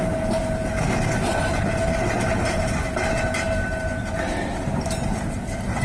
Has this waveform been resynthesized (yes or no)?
no